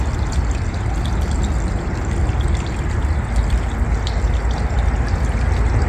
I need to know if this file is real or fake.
real